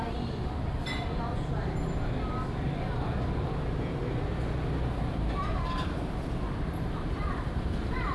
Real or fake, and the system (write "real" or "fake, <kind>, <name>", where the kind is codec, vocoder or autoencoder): real